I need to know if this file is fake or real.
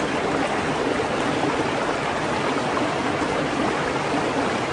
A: real